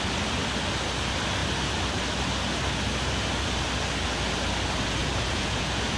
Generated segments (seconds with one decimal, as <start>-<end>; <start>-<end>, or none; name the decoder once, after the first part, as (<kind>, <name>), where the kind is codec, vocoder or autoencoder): 5.0-6.0 (vocoder, Vocos)

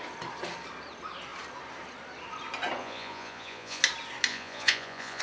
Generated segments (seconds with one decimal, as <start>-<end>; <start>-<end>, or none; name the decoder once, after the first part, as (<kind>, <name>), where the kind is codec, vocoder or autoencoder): 2.8-3.8 (vocoder, Vocos); 4.3-5.2

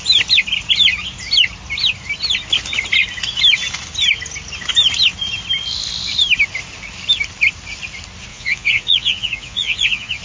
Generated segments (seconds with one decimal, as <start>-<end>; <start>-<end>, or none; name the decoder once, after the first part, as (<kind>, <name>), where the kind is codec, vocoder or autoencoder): 8.3-10.2 (vocoder, Vocos)

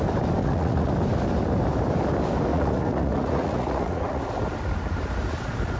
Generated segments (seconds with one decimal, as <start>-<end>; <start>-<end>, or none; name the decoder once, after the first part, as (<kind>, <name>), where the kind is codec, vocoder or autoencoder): 0.4-0.9 (vocoder, Vocos); 2.5-4.2

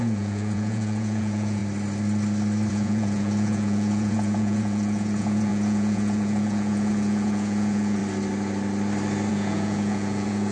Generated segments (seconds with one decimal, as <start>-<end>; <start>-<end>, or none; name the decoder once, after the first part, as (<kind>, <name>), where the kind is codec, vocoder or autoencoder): 0.0-1.6 (vocoder, Vocos); 2.7-8.0; 9.3-10.5

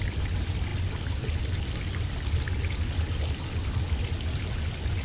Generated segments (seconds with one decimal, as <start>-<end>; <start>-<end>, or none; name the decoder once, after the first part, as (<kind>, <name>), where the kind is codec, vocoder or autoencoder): none